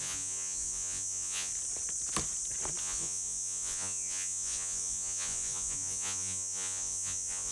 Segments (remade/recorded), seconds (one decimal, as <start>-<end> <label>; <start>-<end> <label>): 0.0-1.5 remade; 1.5-2.8 recorded; 2.8-7.5 remade